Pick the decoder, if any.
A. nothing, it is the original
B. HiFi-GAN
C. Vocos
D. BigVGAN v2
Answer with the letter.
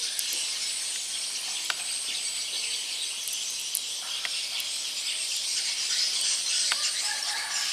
D